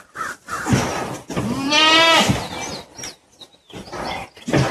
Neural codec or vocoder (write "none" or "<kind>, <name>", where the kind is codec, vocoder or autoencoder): none